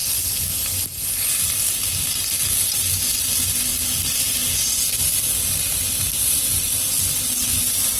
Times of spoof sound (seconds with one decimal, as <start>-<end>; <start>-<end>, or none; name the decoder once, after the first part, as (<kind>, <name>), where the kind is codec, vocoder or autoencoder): none